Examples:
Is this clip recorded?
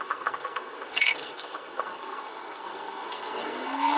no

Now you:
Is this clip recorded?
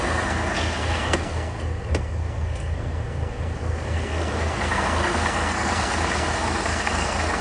no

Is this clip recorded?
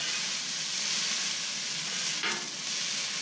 no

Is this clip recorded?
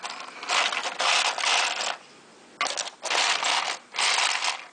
yes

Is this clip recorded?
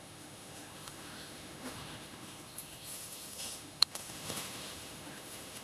no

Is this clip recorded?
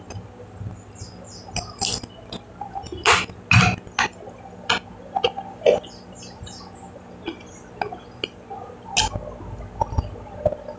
yes